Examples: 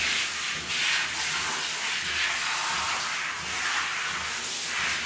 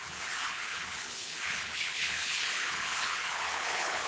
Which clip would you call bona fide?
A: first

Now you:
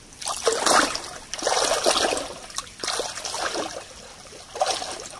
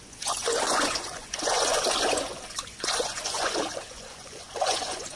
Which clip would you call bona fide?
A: first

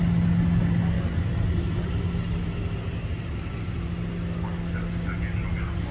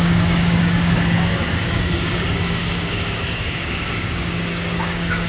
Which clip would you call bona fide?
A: first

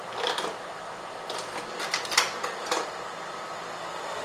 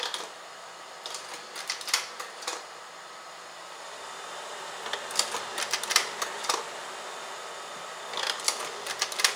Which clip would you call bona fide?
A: first